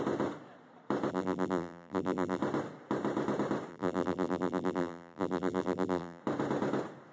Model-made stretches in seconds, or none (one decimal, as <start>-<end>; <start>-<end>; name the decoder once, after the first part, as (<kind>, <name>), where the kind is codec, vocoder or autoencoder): 1.1-2.4 (vocoder, BigVGAN v2); 3.7-6.2